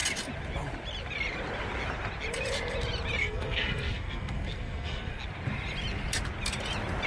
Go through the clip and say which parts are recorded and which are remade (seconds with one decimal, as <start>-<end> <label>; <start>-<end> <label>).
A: 0.0-3.2 recorded; 3.2-5.2 remade; 5.2-7.1 recorded